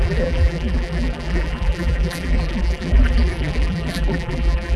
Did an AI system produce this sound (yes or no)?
yes